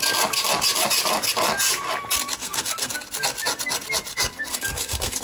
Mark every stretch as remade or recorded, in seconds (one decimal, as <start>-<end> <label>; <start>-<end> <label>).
0.0-2.4 recorded; 2.4-2.9 remade; 2.9-4.1 recorded; 4.1-5.2 remade